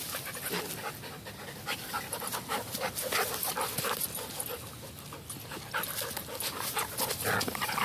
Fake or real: real